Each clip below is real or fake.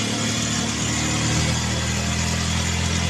real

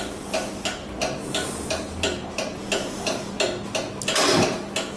real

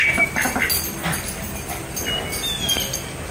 real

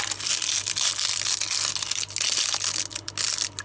real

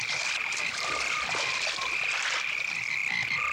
real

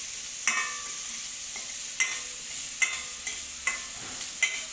real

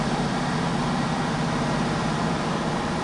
fake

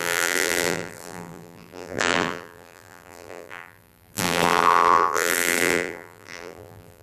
fake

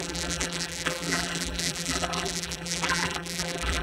fake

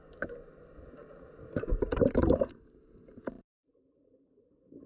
fake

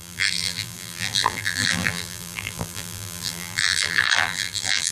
fake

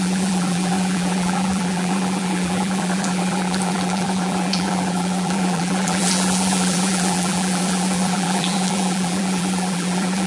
fake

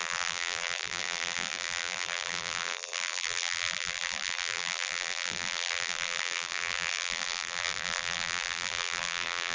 fake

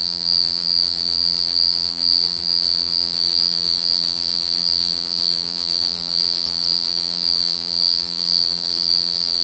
fake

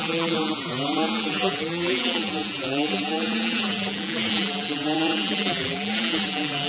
fake